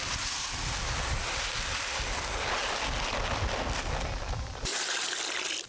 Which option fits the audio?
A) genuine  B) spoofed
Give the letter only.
A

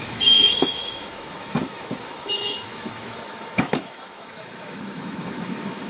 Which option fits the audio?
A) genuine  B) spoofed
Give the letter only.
B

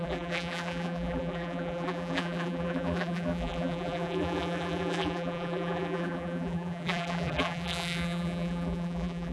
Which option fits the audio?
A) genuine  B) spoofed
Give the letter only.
B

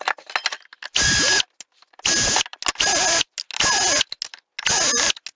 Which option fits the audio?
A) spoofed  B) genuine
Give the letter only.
B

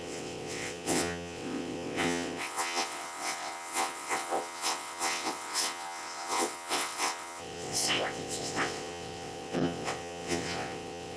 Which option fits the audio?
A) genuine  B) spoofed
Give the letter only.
B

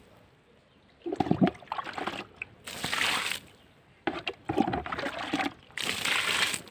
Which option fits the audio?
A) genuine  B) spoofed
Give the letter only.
A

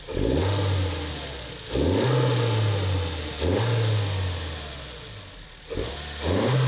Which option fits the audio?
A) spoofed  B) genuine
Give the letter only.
B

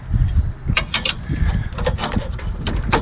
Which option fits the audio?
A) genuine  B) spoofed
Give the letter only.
A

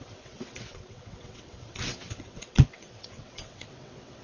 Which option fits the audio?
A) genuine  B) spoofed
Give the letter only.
B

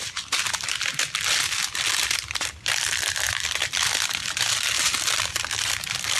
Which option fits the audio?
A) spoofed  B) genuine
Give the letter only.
B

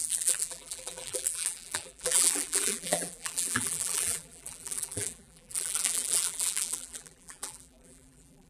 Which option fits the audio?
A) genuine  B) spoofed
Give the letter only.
B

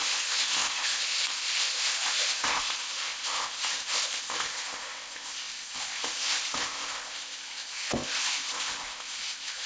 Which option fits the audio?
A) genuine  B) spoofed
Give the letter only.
B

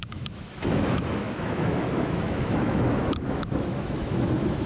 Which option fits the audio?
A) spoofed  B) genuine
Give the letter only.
A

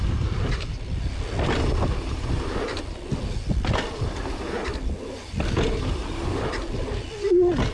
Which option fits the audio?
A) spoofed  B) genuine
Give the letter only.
B